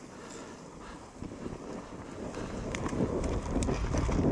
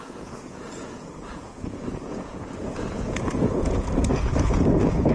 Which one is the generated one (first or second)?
second